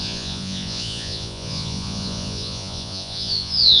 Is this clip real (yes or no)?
no